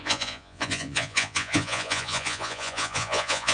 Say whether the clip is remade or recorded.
remade